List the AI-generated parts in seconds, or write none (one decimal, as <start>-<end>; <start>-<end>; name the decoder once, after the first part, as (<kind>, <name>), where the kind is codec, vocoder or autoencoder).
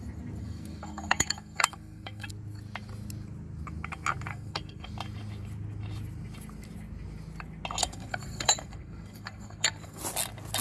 0.4-2.3 (codec, SNAC); 4.3-4.9; 7.8-10.0